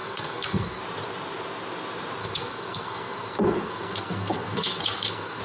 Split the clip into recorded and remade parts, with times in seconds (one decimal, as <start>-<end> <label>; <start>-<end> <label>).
0.0-0.8 remade; 0.8-2.2 recorded; 2.2-5.4 remade